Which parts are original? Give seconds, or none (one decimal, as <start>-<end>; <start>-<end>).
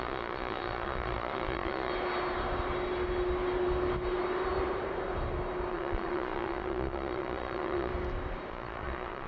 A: 1.9-5.7; 7.9-8.5